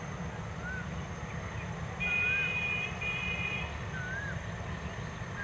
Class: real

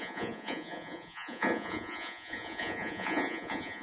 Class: fake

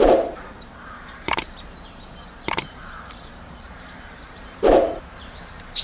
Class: fake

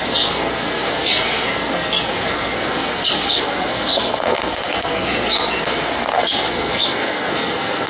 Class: fake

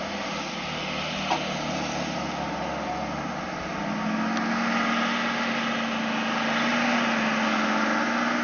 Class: real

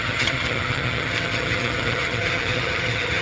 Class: fake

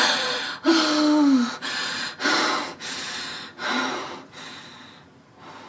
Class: real